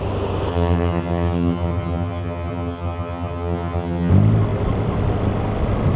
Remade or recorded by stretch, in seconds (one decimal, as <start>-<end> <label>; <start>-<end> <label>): 0.0-0.5 recorded; 0.5-4.1 remade; 4.1-6.0 recorded